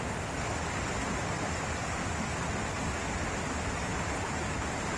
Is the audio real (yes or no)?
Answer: yes